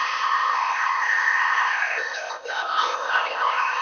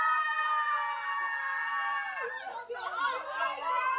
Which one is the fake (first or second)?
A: first